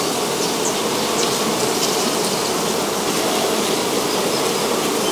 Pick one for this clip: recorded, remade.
recorded